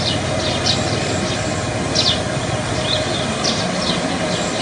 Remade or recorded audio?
recorded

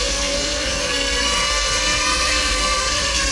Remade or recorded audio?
remade